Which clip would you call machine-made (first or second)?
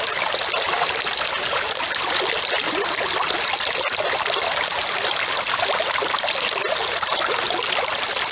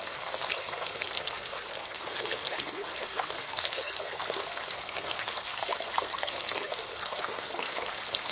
second